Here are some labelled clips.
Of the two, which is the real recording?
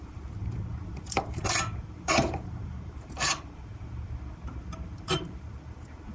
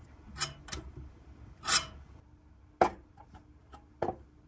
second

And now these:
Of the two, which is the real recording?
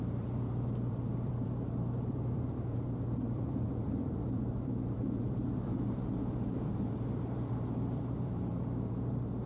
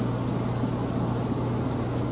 second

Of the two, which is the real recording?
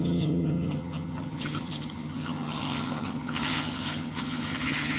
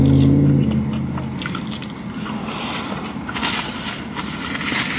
second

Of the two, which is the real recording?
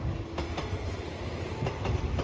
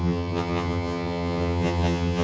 first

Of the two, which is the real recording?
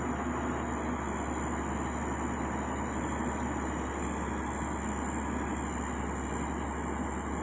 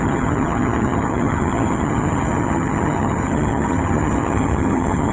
first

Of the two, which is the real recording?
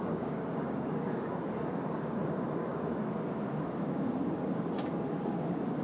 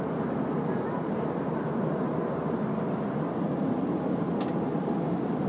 second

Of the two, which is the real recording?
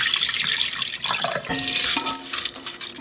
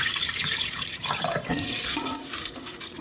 first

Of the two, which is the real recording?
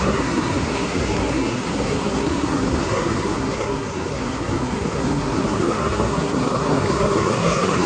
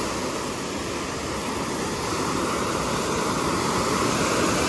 second